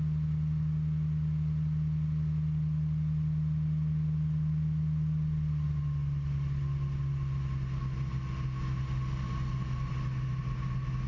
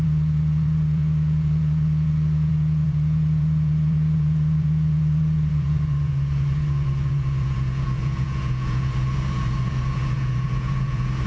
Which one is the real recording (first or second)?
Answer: first